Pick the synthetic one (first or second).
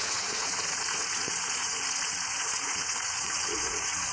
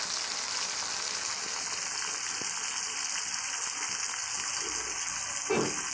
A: first